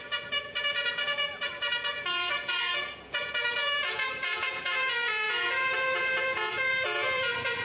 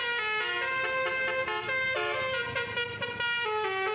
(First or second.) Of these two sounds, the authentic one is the second